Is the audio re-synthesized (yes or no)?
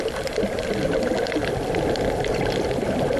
no